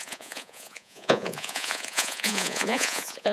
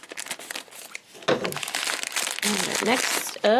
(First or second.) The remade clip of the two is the first